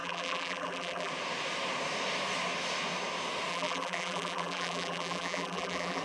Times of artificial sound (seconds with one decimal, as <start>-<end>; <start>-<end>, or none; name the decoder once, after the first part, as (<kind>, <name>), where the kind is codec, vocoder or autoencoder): 0.0-1.1 (vocoder, BigVGAN v2); 3.5-6.0